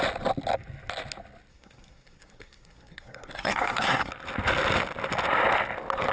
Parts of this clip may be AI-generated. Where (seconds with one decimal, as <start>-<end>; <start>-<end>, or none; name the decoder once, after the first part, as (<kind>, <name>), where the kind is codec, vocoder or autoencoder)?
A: 1.5-4.1 (codec, SNAC)